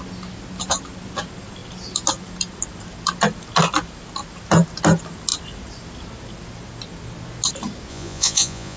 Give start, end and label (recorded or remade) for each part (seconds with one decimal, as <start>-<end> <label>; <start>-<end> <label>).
0.0-7.9 recorded; 7.9-8.8 remade